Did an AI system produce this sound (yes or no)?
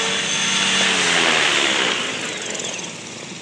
no